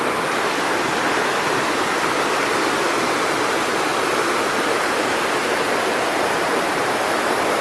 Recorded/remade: recorded